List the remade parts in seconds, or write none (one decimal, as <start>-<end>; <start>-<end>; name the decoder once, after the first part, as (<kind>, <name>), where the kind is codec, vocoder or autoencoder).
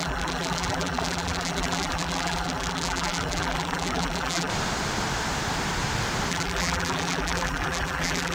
0.0-4.5 (vocoder, BigVGAN v2); 6.3-8.3